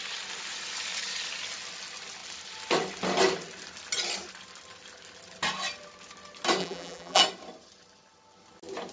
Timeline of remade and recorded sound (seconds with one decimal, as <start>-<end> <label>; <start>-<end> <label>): 0.0-6.6 recorded; 6.6-7.2 remade; 7.2-8.9 recorded